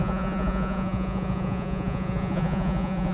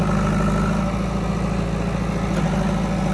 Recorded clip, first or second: second